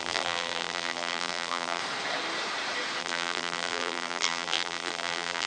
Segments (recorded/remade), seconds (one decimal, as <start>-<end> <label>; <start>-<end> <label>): 0.0-1.8 remade; 1.8-3.0 recorded; 3.0-5.5 remade